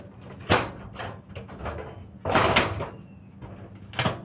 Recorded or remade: recorded